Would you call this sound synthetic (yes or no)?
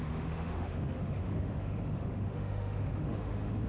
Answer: yes